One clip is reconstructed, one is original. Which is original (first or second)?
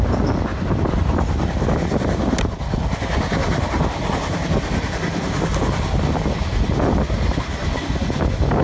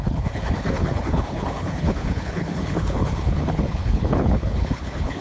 first